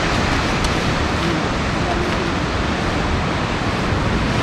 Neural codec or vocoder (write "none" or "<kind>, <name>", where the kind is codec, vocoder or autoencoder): none